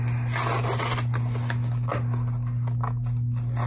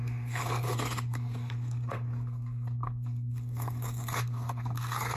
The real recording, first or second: first